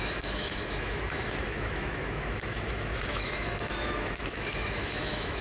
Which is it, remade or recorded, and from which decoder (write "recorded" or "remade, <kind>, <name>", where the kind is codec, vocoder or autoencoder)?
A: remade, autoencoder, DAC-VAE